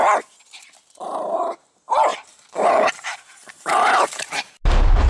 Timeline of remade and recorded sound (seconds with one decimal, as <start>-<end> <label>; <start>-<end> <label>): 0.0-2.1 recorded; 2.1-4.3 remade; 4.3-5.1 recorded